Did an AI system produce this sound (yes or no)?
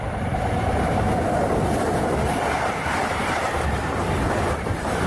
yes